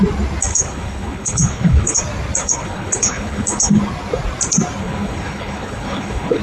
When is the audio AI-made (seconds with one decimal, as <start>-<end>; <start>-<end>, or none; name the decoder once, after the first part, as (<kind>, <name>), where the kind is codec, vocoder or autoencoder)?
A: 0.5-2.0 (codec, HILCodec); 2.4-3.8; 4.8-6.4